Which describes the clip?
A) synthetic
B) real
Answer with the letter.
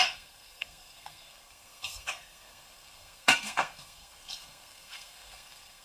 A